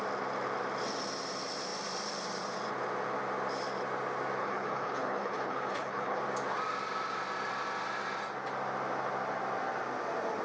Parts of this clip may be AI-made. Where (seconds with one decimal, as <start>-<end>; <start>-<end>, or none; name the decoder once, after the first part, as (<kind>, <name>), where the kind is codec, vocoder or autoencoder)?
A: 4.4-6.2 (codec, HILCodec)